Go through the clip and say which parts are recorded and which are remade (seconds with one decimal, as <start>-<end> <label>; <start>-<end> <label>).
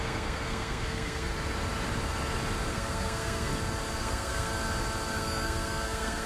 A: 0.0-1.3 remade; 1.3-2.7 recorded; 2.7-3.5 remade; 3.5-4.0 recorded; 4.0-4.5 remade; 4.5-5.1 recorded; 5.1-6.3 remade